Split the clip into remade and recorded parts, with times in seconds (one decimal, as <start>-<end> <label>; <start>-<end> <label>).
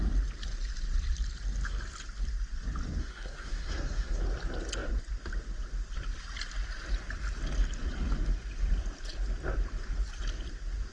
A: 0.0-3.0 recorded; 3.0-4.2 remade; 4.2-10.9 recorded